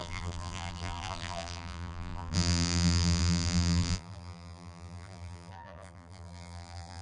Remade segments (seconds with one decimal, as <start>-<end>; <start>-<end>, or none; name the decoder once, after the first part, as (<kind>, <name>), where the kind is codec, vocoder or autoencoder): 0.0-7.0 (vocoder, BigVGAN v2)